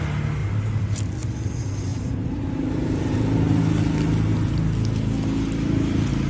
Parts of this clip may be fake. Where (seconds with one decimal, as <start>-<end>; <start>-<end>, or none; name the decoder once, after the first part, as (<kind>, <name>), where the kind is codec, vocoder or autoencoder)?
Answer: 0.4-1.1 (vocoder, BigVGAN v2); 1.9-3.6